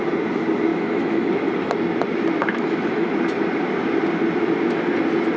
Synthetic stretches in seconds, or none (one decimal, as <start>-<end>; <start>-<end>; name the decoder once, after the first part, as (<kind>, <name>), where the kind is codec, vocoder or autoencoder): 0.7-1.3 (autoencoder, DAC-VAE); 2.4-3.1